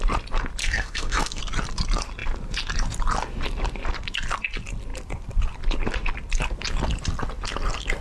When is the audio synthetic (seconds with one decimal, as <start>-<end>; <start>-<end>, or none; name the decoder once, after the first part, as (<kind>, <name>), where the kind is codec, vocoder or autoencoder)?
0.6-1.4 (codec, SNAC)